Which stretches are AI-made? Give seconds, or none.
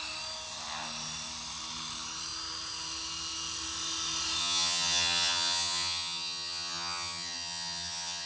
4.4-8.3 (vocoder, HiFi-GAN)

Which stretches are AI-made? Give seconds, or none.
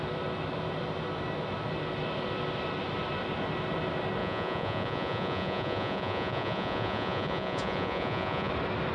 4.2-8.5 (vocoder, Vocos)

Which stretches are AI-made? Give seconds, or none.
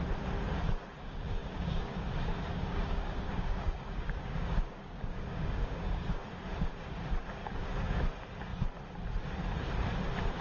1.4-6.1 (codec, DAC); 7.4-8.0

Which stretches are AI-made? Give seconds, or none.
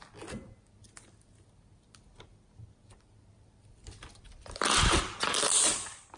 none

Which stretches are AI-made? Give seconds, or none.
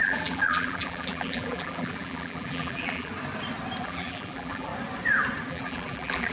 0.0-3.1 (vocoder, BigVGAN v2); 3.8-4.7; 5.5-6.3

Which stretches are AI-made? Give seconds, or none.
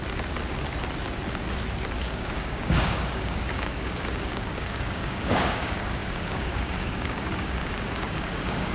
2.0-8.7 (codec, DAC)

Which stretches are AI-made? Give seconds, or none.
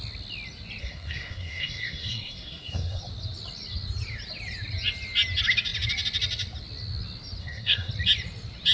0.8-3.0 (codec, SNAC); 7.4-7.9